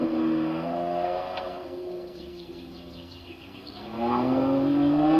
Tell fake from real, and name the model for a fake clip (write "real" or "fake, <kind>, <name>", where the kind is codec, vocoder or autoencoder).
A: fake, codec, SNAC